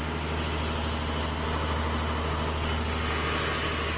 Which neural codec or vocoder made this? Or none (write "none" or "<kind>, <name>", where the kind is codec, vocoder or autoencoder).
none